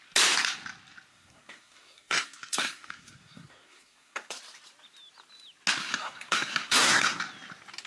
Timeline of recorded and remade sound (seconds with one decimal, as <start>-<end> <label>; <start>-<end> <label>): 0.0-1.1 recorded; 1.1-4.4 remade; 4.4-5.8 recorded; 5.8-7.2 remade; 7.2-7.9 recorded